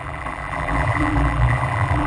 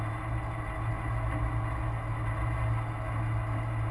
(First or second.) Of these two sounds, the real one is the second